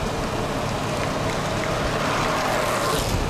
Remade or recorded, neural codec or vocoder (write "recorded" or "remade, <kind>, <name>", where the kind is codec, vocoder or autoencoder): recorded